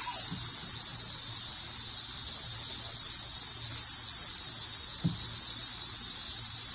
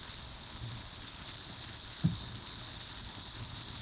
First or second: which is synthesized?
second